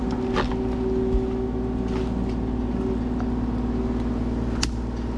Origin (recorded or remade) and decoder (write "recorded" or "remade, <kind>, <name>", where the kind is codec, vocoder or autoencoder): recorded